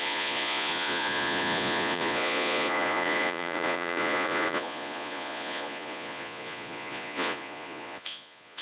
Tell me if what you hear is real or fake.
fake